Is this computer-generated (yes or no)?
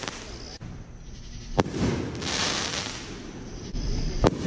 no